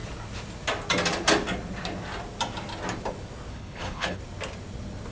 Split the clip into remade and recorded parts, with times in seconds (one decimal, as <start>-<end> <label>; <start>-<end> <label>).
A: 0.0-3.5 recorded; 3.5-4.2 remade; 4.2-5.1 recorded